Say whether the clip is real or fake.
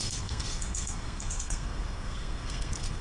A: fake